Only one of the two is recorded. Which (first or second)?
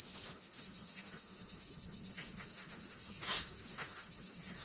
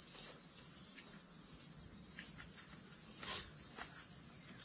second